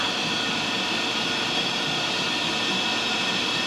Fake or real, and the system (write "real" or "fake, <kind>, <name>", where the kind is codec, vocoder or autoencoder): fake, vocoder, BigVGAN v2